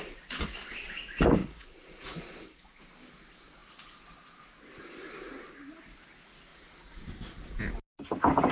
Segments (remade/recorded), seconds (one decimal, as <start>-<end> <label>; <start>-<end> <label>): 0.0-1.4 recorded; 1.4-2.8 remade; 2.8-6.5 recorded; 6.5-7.6 remade; 7.6-8.5 recorded